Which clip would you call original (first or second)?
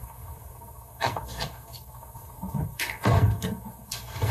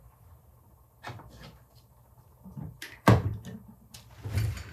second